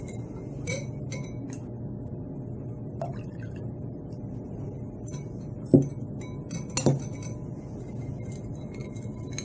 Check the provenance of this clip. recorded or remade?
recorded